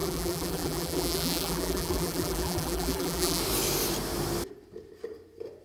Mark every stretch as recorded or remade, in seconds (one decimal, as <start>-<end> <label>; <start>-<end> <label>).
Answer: 0.0-3.4 remade; 3.4-5.6 recorded